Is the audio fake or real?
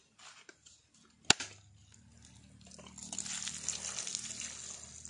real